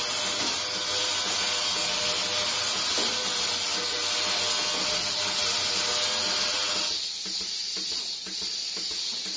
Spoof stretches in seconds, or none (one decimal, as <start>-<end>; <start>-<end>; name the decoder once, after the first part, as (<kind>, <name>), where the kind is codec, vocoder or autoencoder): none